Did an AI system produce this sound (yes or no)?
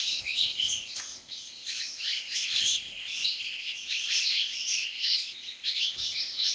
yes